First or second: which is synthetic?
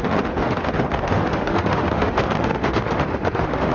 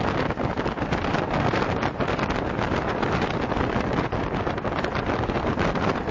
first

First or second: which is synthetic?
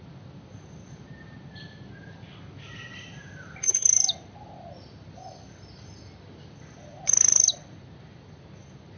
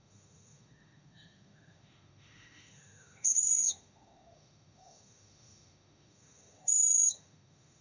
second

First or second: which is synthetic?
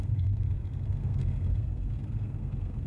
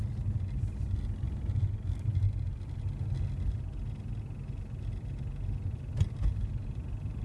first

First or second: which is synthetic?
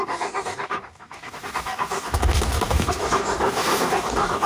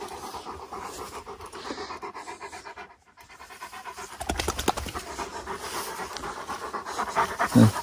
first